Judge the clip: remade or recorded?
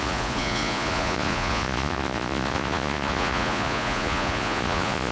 remade